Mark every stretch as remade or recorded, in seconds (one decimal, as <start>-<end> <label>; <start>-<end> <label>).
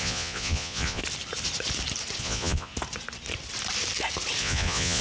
0.0-1.0 remade; 1.0-2.2 recorded; 2.2-2.7 remade; 2.7-4.4 recorded; 4.4-5.0 remade